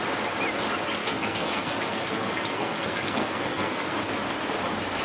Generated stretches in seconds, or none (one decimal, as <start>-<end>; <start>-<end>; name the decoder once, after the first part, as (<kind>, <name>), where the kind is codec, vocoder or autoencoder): 1.0-4.0 (codec, SNAC)